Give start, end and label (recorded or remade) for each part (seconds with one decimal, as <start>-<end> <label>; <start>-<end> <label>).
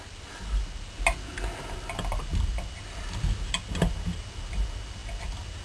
0.0-5.6 recorded